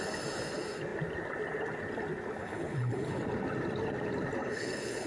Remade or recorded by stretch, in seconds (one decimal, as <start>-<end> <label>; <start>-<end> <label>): 0.0-2.4 recorded; 2.4-3.2 remade; 3.2-4.4 recorded; 4.4-5.1 remade